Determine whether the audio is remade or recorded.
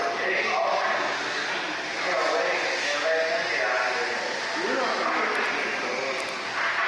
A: recorded